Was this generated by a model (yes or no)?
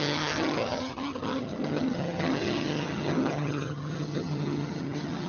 yes